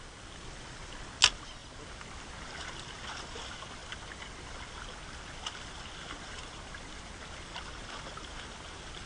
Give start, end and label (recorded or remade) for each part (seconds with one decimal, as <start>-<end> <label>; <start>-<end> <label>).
0.0-9.1 recorded